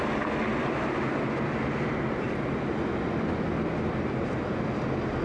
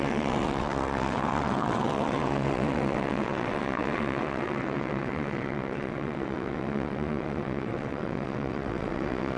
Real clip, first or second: first